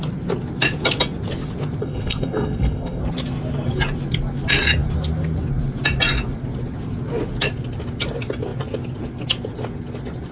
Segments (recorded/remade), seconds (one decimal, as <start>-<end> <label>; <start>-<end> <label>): 0.0-1.8 recorded; 1.8-3.0 remade; 3.0-10.3 recorded